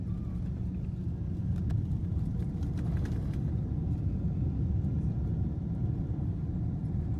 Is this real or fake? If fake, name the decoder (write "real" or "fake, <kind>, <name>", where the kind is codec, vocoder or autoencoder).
real